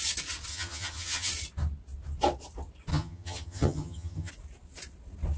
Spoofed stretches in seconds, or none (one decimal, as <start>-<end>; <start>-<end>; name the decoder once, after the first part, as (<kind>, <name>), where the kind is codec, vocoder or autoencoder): 0.5-1.3 (vocoder, HiFi-GAN); 2.9-4.3